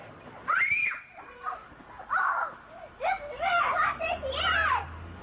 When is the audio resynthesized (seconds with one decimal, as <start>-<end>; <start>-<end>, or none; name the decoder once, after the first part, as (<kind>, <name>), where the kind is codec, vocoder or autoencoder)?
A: 0.0-3.1 (vocoder, BigVGAN v2)